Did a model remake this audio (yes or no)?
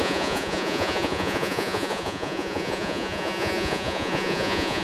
yes